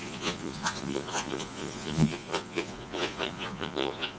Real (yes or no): no